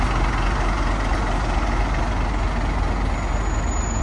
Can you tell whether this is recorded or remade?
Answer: recorded